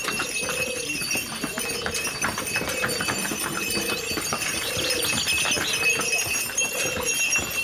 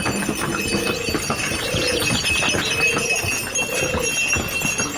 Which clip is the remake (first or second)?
first